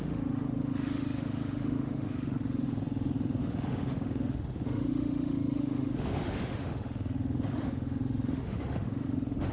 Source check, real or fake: fake